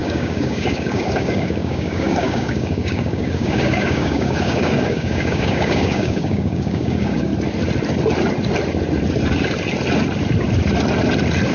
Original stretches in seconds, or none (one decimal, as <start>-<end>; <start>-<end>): 7.3-11.5